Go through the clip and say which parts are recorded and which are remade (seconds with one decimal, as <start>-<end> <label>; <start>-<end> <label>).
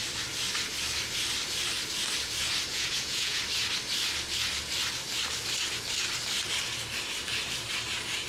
0.0-2.7 recorded; 2.7-3.4 remade; 3.4-8.3 recorded